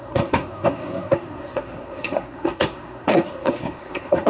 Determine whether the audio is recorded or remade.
remade